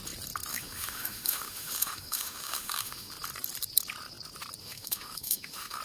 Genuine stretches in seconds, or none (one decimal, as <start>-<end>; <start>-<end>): 0.0-0.5; 3.1-4.6